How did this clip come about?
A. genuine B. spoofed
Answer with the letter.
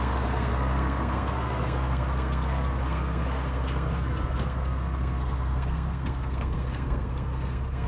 B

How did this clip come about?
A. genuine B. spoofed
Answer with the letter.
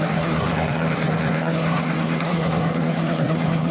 B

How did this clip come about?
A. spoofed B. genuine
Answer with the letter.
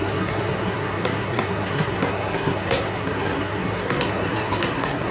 A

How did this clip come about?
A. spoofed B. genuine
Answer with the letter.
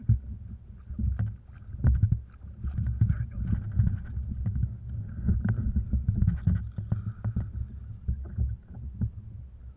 B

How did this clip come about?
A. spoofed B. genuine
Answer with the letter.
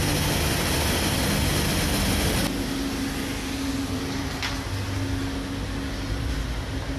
B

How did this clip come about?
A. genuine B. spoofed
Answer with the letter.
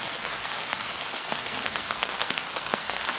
B